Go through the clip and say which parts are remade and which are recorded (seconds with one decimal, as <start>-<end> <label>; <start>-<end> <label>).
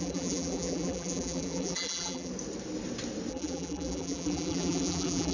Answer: 0.0-2.3 remade; 2.3-3.3 recorded; 3.3-5.3 remade